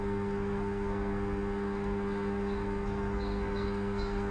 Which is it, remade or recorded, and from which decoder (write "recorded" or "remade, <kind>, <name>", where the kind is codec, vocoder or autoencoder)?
remade, codec, SNAC